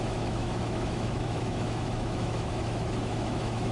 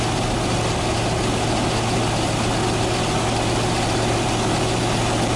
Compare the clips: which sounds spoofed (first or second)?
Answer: first